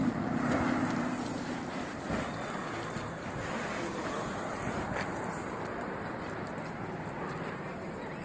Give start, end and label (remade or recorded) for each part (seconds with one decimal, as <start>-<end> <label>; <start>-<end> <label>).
0.0-0.8 recorded; 0.8-2.6 remade; 2.6-4.6 recorded; 4.6-8.2 remade